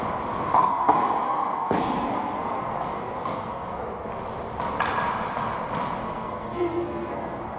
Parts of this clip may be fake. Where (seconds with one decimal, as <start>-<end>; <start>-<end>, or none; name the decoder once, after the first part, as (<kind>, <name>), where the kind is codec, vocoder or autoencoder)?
0.6-4.1 (codec, SNAC); 6.0-7.6